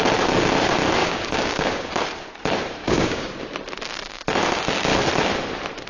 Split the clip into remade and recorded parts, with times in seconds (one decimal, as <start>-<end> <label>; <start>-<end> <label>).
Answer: 0.0-1.0 recorded; 1.0-1.9 remade; 1.9-2.8 recorded; 2.8-3.3 remade; 3.3-5.9 recorded